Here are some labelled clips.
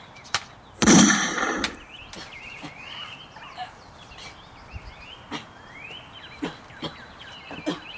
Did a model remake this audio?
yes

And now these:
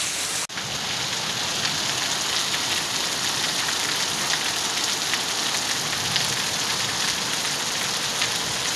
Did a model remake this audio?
no